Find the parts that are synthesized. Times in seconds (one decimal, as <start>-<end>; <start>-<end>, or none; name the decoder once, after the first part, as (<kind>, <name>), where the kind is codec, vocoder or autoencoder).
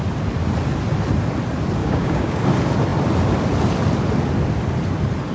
1.8-2.4 (codec, DAC)